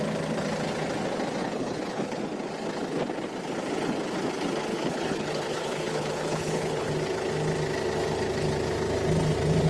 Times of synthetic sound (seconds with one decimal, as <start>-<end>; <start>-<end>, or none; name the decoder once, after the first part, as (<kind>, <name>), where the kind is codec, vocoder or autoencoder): 1.4-2.2 (codec, HILCodec); 4.7-6.9

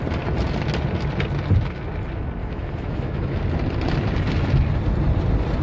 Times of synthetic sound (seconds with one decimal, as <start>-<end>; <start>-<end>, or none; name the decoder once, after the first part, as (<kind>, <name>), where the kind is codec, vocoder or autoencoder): 2.4-3.4 (autoencoder, DAC-VAE)